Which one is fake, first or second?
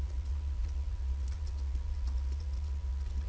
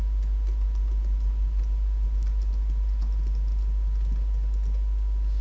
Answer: first